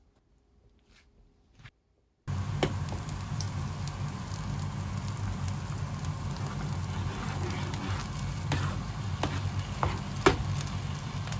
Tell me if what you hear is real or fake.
real